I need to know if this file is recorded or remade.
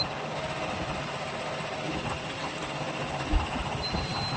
recorded